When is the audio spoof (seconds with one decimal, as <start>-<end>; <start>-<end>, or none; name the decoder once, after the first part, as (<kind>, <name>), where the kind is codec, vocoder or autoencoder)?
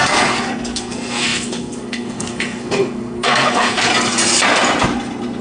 0.0-3.9 (codec, SNAC)